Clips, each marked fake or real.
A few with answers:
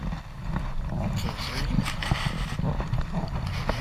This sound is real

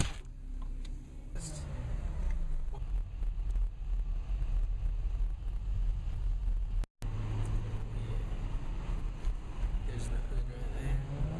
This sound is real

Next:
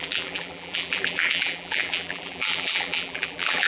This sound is fake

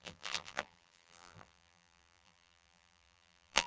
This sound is fake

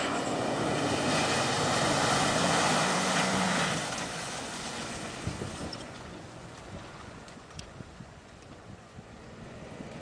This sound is fake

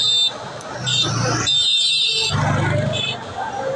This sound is real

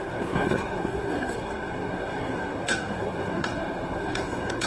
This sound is fake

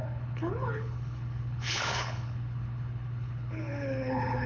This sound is fake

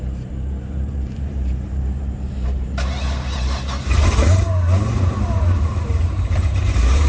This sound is fake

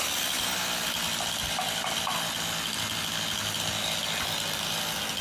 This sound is real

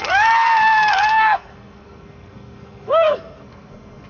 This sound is fake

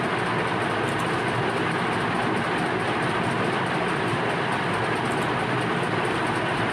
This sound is real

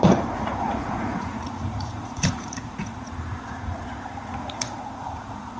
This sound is fake